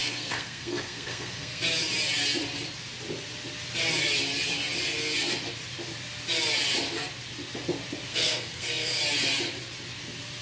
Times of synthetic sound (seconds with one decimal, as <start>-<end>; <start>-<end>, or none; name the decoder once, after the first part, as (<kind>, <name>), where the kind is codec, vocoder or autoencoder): 0.0-1.6 (codec, SNAC); 8.1-9.0